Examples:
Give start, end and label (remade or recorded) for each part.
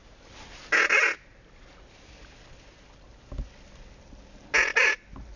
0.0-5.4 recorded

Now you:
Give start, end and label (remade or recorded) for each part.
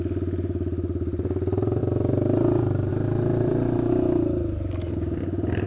0.0-1.8 recorded; 1.8-2.9 remade; 2.9-3.3 recorded; 3.3-3.9 remade; 3.9-5.7 recorded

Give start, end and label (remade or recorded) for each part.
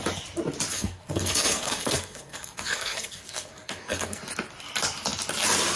0.0-0.7 recorded; 0.7-4.2 remade; 4.2-5.8 recorded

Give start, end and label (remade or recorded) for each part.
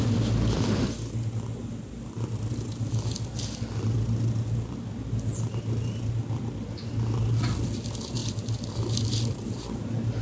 0.0-10.2 recorded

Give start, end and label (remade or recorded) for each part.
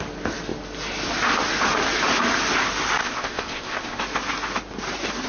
0.0-3.0 recorded; 3.0-4.0 remade; 4.0-5.3 recorded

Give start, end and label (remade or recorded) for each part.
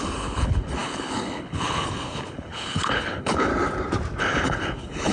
0.0-3.5 remade; 3.5-4.2 recorded; 4.2-5.1 remade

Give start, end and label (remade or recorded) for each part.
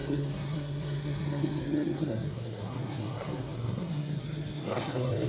0.0-5.3 remade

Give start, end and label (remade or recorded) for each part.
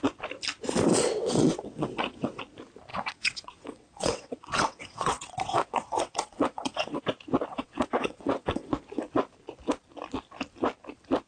0.0-0.9 recorded; 0.9-2.4 remade; 2.4-2.9 recorded; 2.9-7.0 remade; 7.0-7.5 recorded; 7.5-8.7 remade; 8.7-11.3 recorded